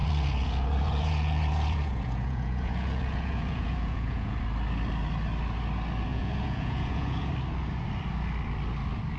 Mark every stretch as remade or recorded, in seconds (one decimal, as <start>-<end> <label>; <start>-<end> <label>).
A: 0.0-4.4 remade; 4.4-6.1 recorded; 6.1-7.3 remade; 7.3-9.2 recorded